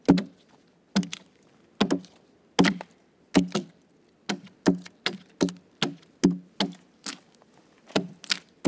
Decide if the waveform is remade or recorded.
recorded